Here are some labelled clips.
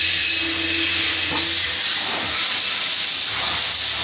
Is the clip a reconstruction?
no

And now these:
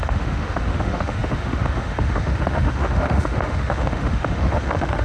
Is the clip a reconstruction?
yes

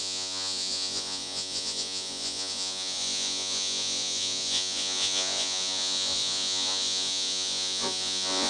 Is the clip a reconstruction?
yes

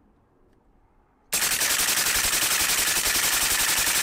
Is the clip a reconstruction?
no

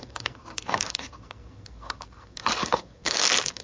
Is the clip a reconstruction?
yes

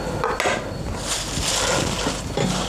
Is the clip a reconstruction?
no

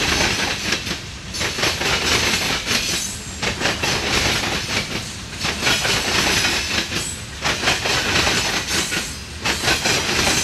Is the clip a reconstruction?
no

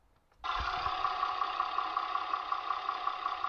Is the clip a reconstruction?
no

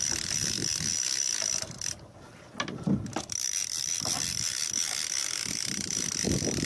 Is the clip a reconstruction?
no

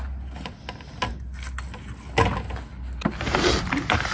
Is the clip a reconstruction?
no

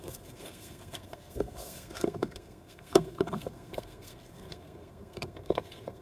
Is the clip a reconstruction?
yes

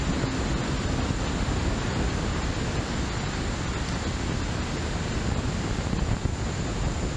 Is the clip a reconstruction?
no